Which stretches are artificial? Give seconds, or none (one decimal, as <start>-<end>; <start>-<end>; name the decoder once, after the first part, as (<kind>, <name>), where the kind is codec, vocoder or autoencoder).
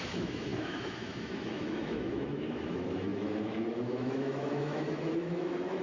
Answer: 0.0-5.8 (autoencoder, DAC-VAE)